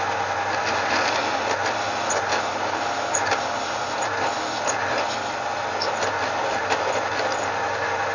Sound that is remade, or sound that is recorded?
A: recorded